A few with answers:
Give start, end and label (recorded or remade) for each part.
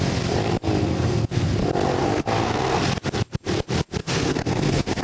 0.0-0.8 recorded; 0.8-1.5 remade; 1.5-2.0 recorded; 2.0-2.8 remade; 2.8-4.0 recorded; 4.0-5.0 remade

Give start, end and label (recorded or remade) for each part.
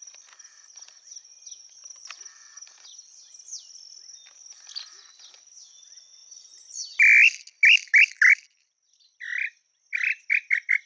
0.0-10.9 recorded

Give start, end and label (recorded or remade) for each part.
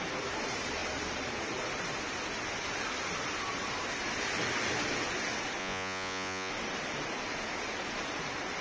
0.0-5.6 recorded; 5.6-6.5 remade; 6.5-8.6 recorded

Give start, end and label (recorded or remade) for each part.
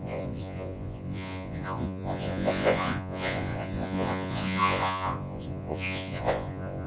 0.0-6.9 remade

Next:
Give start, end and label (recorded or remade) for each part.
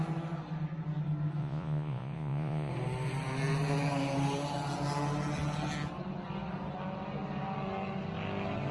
0.0-1.4 recorded; 1.4-2.7 remade; 2.7-8.7 recorded